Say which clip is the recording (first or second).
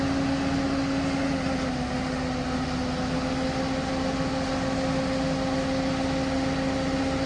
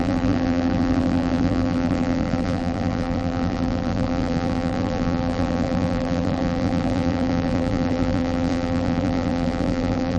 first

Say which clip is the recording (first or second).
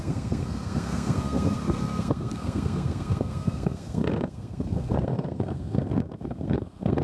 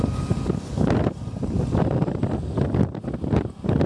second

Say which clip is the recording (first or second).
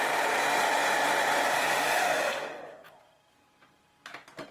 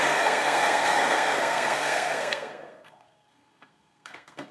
first